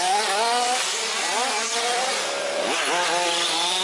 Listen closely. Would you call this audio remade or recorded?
remade